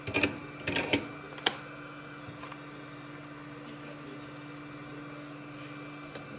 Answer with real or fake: real